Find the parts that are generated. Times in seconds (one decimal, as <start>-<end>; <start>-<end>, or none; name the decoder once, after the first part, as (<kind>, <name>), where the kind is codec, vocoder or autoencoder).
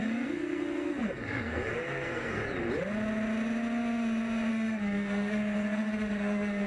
0.0-2.4 (codec, SNAC); 4.5-6.7